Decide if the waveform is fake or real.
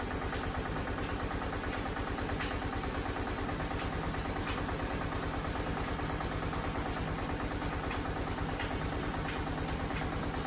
real